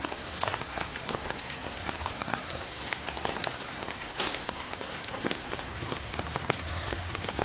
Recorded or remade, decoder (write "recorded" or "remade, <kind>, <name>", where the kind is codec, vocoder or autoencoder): remade, codec, SNAC